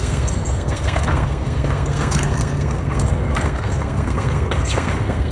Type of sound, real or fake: fake